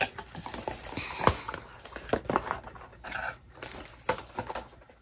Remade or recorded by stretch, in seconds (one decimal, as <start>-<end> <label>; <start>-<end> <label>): 0.0-2.9 recorded; 2.9-3.9 remade; 3.9-5.0 recorded